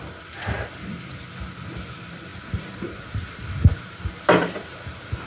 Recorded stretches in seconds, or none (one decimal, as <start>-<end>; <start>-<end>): 0.0-2.3; 4.0-5.3